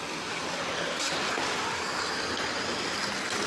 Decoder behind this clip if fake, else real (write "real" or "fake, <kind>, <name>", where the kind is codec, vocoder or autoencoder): real